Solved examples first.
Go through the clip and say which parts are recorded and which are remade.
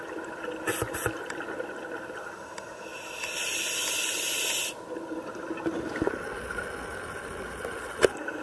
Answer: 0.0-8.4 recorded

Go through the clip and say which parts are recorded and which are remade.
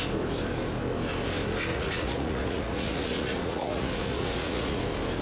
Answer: 0.0-1.7 recorded; 1.7-4.8 remade; 4.8-5.2 recorded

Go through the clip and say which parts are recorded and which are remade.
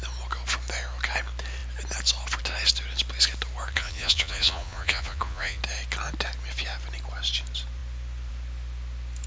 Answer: 0.0-3.7 recorded; 3.7-5.6 remade; 5.6-9.3 recorded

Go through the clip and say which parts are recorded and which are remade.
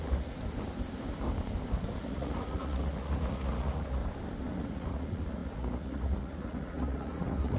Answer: 0.0-0.4 remade; 0.4-2.0 recorded; 2.0-4.0 remade; 4.0-4.6 recorded; 4.6-7.6 remade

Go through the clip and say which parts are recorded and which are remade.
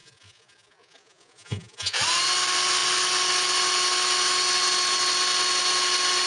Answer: 0.0-2.0 remade; 2.0-6.3 recorded